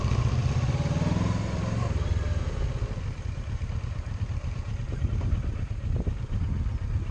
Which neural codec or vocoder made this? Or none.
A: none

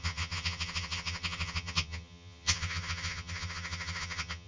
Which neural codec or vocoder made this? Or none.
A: vocoder, HiFi-GAN